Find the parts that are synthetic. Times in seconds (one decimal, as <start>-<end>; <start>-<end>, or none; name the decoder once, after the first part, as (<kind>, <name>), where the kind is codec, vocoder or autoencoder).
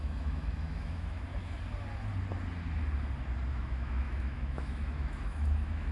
0.0-1.3 (autoencoder, DAC-VAE); 3.5-5.9